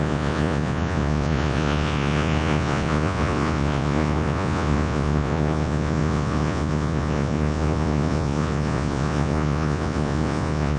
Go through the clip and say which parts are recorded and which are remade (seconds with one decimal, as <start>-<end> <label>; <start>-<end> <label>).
0.0-10.8 remade

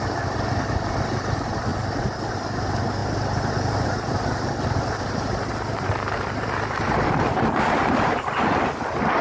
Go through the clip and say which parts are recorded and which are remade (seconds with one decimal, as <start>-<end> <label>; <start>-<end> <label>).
0.0-3.0 recorded; 3.0-8.2 remade; 8.2-9.2 recorded

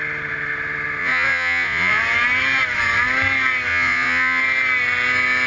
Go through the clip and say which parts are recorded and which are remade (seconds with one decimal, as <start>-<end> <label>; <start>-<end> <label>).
0.0-1.0 recorded; 1.0-2.0 remade; 2.0-3.7 recorded; 3.7-4.4 remade; 4.4-5.5 recorded

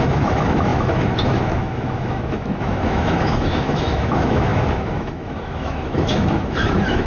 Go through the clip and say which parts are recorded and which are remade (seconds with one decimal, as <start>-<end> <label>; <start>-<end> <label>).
0.0-7.1 remade

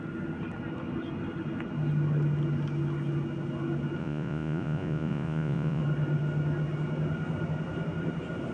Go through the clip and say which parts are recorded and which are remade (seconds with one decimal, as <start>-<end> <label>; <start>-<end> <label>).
0.0-4.0 recorded; 4.0-5.8 remade; 5.8-8.5 recorded

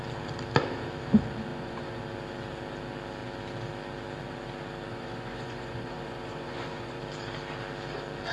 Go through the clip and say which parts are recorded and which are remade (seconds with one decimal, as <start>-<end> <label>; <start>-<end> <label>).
0.0-1.5 recorded; 1.5-2.0 remade; 2.0-4.9 recorded; 4.9-7.0 remade; 7.0-8.3 recorded

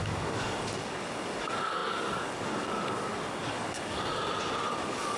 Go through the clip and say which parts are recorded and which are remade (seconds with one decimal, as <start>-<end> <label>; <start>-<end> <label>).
0.0-4.2 remade; 4.2-4.7 recorded; 4.7-5.2 remade

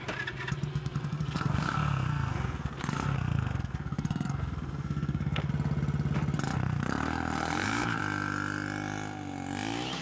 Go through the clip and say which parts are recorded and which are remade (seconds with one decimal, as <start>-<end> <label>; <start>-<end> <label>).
0.0-0.7 recorded; 0.7-5.5 remade; 5.5-6.6 recorded; 6.6-8.0 remade; 8.0-10.0 recorded